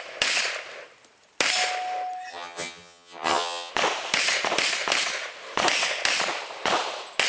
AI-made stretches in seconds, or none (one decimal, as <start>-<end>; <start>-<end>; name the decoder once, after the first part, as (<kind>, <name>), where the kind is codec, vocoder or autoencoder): 2.3-3.7 (vocoder, HiFi-GAN)